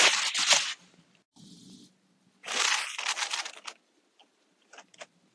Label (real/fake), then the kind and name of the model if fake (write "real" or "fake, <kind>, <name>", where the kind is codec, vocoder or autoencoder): real